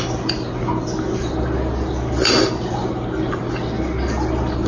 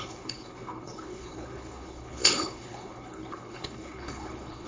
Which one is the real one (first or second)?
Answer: first